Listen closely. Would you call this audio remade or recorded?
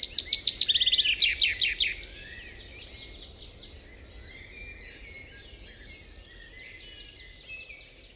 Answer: recorded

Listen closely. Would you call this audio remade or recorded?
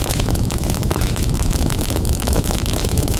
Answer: remade